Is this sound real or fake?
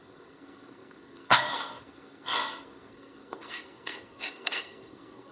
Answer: fake